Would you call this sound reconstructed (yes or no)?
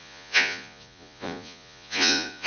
yes